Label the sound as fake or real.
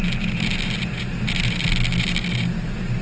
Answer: real